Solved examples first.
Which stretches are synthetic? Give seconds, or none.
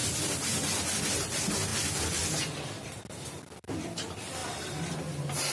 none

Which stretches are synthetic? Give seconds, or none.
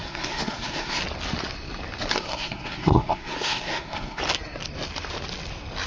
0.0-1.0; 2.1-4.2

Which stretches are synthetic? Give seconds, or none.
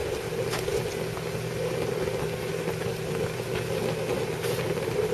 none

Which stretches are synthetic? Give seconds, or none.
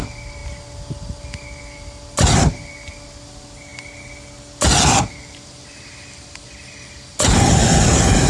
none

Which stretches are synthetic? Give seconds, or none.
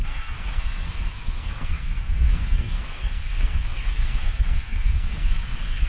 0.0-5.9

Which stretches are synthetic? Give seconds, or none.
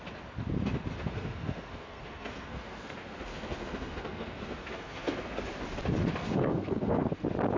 1.1-5.4; 6.2-7.1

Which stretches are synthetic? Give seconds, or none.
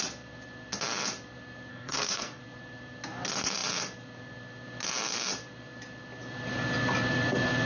1.7-2.4